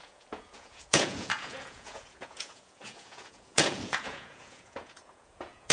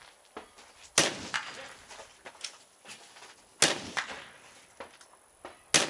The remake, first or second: first